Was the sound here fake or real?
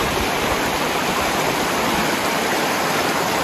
fake